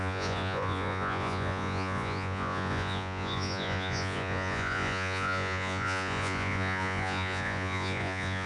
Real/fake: fake